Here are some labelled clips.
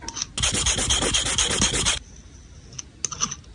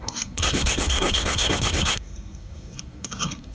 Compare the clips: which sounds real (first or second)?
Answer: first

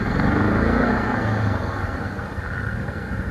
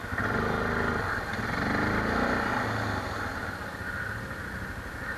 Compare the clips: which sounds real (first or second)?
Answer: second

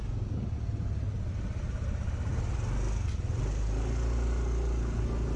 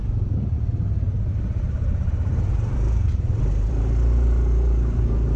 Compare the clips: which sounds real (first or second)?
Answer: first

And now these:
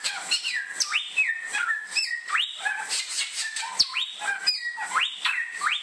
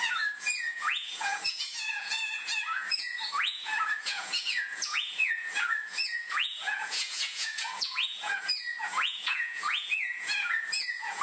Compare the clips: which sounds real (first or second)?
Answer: first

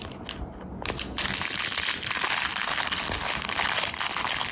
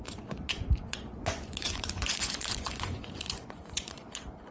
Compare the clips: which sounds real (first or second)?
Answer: first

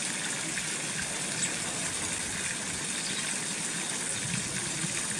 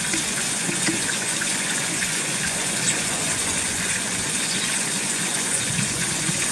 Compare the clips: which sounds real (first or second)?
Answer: first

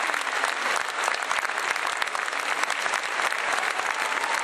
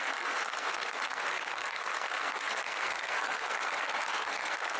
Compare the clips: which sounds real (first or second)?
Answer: first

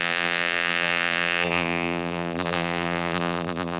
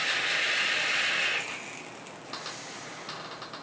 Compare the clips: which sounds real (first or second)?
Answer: second